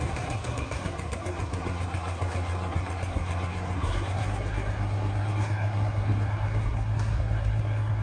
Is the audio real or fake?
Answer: fake